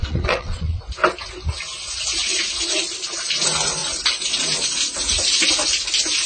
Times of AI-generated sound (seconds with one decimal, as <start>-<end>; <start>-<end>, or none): 0.0-0.8